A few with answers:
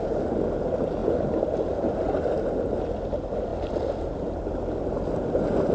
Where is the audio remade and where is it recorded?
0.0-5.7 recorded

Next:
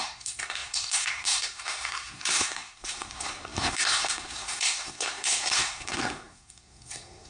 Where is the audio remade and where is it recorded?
0.0-7.3 remade

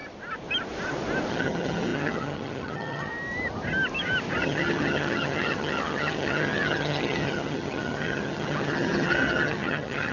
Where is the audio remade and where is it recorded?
0.0-1.3 recorded; 1.3-3.1 remade; 3.1-4.4 recorded; 4.4-10.1 remade

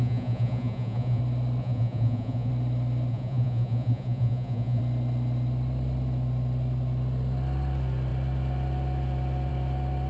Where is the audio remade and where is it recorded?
0.0-1.2 remade; 1.2-1.6 recorded; 1.6-2.5 remade; 2.5-3.1 recorded; 3.1-4.8 remade; 4.8-10.1 recorded